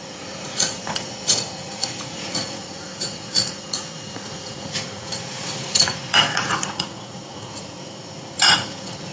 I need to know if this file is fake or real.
fake